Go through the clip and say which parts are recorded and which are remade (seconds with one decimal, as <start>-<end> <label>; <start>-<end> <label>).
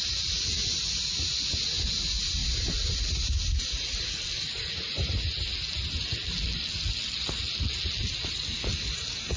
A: 0.0-9.4 recorded